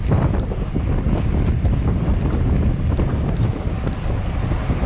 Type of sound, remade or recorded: remade